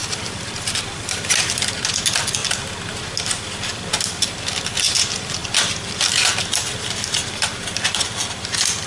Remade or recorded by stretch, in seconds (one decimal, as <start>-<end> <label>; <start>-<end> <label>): 0.0-1.7 remade; 1.7-2.4 recorded; 2.4-2.9 remade; 2.9-8.9 recorded